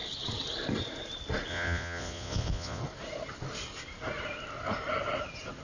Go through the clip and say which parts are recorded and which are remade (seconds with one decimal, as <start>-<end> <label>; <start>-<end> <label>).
0.0-1.5 recorded; 1.5-2.8 remade; 2.8-5.6 recorded